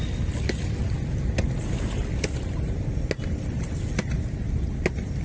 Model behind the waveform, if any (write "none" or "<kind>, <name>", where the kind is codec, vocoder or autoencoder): none